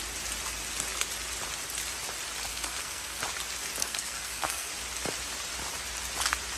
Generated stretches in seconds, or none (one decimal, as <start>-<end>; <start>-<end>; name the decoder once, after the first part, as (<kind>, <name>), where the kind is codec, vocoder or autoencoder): 2.5-3.2 (codec, SNAC); 3.8-4.7